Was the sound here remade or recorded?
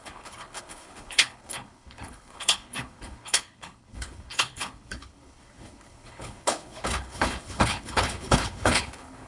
remade